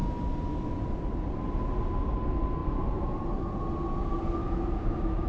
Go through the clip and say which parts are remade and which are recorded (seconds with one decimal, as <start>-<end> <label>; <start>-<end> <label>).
0.0-4.4 recorded; 4.4-5.3 remade